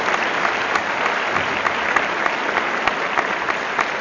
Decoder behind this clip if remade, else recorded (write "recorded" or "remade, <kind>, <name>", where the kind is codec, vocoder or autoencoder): recorded